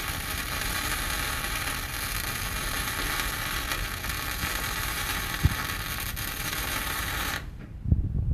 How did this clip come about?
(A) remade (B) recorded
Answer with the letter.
A